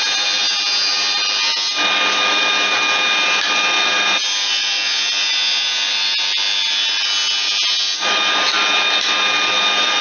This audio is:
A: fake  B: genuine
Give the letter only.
B